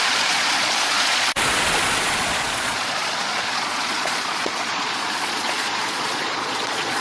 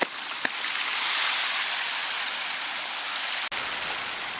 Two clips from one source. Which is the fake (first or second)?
first